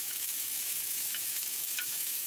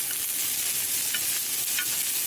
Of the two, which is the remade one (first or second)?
first